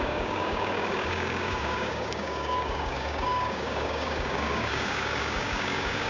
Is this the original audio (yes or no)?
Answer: no